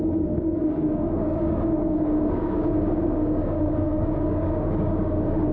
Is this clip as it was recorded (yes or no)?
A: no